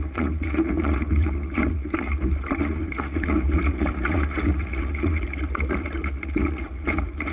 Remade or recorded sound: remade